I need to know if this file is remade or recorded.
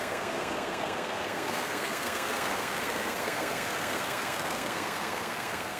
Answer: remade